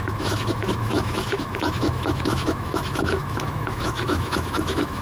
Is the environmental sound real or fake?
fake